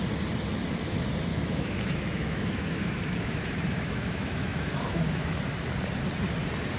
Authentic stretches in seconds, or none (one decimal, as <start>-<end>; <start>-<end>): 0.0-1.3; 5.4-6.8